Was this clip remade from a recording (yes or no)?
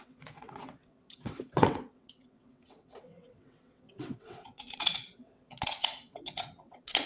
yes